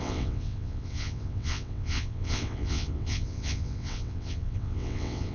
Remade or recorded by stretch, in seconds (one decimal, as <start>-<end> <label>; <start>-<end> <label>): 0.0-5.3 remade